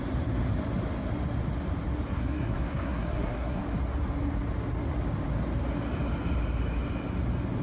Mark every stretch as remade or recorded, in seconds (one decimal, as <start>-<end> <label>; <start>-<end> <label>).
0.0-2.1 recorded; 2.1-3.6 remade; 3.6-7.6 recorded